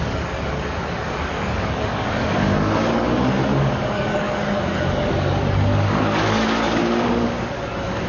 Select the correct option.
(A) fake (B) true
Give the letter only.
A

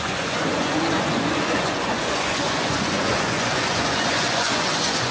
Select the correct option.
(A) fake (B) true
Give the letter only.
A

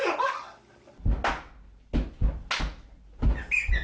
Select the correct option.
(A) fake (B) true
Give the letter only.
B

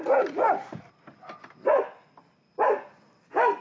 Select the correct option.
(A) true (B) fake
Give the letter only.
A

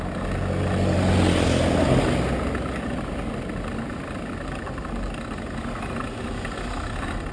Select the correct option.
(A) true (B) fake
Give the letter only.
A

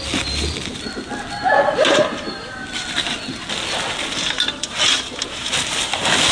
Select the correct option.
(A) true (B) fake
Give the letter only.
A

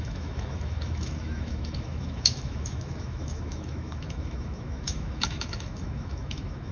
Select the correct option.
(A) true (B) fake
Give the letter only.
B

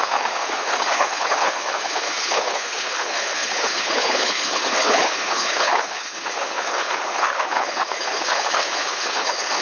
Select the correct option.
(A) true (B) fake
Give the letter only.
B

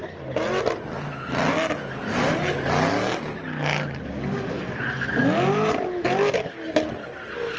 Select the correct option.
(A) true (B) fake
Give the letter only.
A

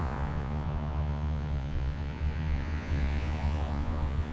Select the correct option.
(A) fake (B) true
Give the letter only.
A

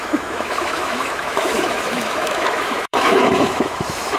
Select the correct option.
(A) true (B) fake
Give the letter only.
B